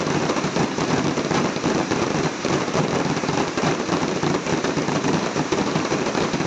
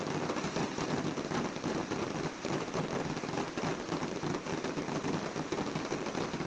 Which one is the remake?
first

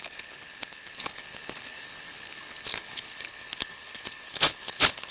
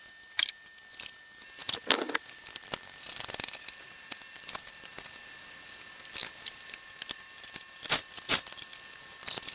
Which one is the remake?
first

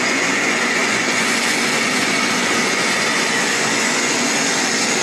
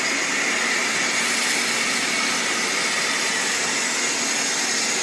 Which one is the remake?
first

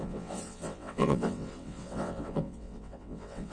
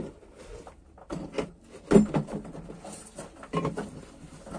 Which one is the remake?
first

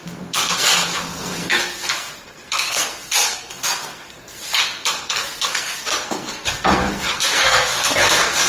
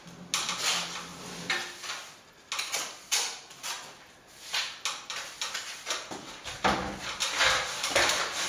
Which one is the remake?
first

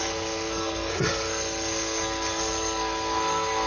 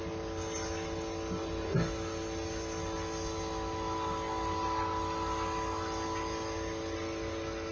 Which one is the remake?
first